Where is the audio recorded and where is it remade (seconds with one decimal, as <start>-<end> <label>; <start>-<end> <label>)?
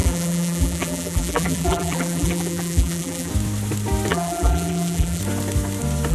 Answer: 0.0-3.3 remade; 3.3-4.1 recorded; 4.1-5.2 remade; 5.2-6.1 recorded